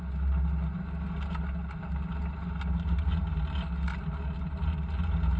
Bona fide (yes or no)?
yes